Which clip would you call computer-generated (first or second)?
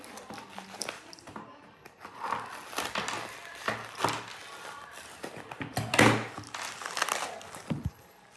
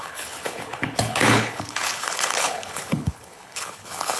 second